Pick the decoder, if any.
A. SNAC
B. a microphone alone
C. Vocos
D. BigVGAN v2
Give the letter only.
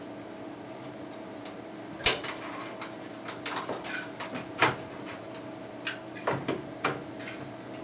B